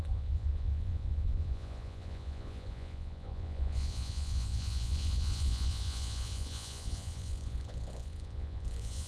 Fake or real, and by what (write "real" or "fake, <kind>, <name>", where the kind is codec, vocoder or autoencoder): fake, vocoder, Vocos